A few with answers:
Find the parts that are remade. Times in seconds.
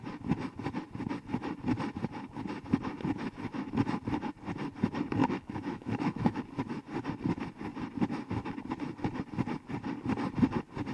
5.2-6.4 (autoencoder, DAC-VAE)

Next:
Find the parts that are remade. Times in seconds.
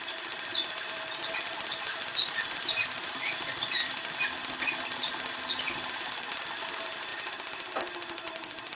none